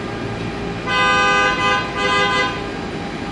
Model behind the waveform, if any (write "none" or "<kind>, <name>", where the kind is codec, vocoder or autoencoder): none